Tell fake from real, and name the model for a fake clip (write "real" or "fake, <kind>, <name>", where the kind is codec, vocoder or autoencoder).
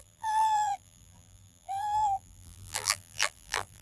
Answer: fake, vocoder, BigVGAN v2